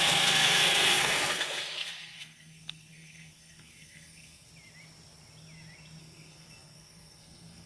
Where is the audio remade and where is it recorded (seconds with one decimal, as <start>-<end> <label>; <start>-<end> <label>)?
0.0-4.5 remade; 4.5-6.0 recorded; 6.0-7.7 remade